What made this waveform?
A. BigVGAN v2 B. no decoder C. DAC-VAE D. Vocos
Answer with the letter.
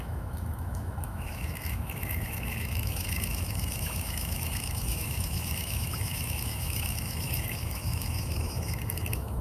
C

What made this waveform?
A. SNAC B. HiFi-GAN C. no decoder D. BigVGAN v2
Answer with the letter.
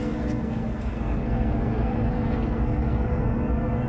A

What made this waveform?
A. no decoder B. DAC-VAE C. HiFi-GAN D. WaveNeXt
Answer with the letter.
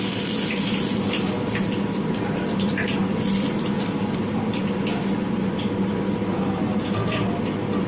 A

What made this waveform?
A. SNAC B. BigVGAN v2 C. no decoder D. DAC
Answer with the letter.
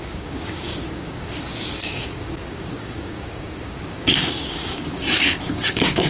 D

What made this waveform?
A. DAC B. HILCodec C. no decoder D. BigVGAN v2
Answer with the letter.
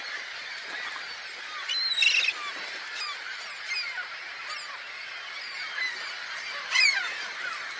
C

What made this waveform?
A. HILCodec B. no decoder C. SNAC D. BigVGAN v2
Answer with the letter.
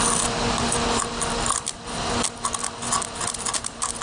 B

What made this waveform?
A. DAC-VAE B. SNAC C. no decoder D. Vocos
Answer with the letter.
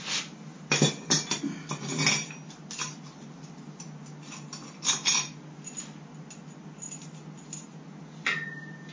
C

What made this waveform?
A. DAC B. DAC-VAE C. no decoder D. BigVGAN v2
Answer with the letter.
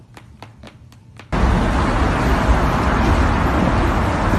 C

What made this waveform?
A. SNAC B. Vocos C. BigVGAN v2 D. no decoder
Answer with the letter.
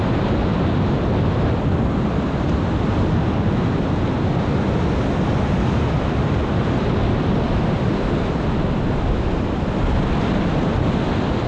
D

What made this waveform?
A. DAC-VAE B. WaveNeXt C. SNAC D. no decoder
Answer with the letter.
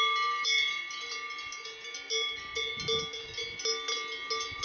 D